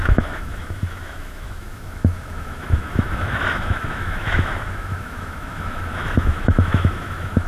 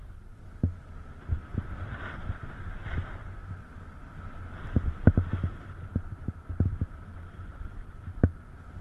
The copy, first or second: first